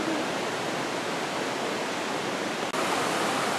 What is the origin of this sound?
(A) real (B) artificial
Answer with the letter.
A